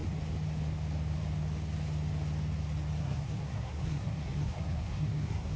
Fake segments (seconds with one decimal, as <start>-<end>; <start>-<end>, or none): 3.0-5.6